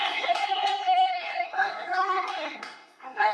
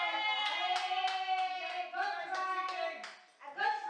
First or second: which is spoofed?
first